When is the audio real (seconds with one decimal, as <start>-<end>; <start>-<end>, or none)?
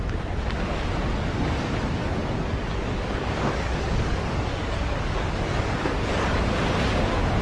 0.0-2.0; 6.4-7.4